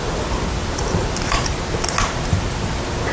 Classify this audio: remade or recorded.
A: recorded